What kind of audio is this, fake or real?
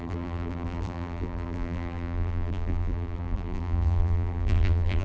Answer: fake